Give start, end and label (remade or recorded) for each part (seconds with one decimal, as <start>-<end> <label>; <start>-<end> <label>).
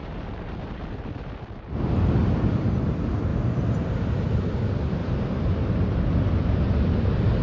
0.0-1.0 remade; 1.0-3.3 recorded; 3.3-4.0 remade; 4.0-5.0 recorded; 5.0-5.8 remade; 5.8-7.4 recorded